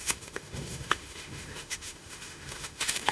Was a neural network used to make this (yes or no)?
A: yes